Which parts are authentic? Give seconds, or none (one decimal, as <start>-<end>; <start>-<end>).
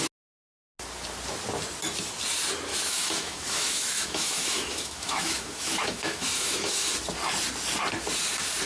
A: 0.0-2.7; 6.9-8.7